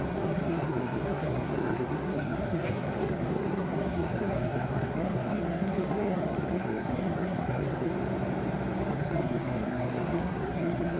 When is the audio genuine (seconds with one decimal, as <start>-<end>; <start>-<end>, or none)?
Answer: 7.9-8.9